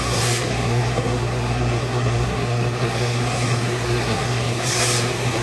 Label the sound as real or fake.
fake